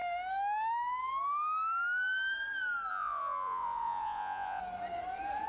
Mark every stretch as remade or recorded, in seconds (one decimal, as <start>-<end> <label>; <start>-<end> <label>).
0.0-2.9 recorded; 2.9-4.6 remade; 4.6-5.5 recorded